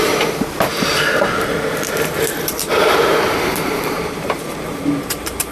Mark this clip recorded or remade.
remade